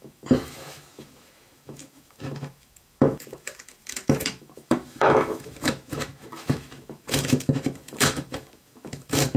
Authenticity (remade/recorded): remade